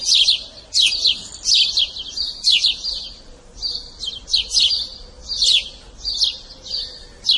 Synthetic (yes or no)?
no